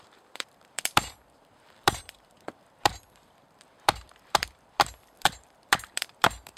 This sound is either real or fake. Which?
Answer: fake